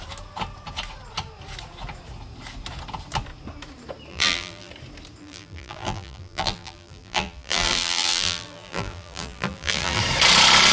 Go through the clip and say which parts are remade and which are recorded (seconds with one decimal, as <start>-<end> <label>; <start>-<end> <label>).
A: 0.0-4.1 recorded; 4.1-4.7 remade; 4.7-5.2 recorded; 5.2-10.0 remade; 10.0-10.7 recorded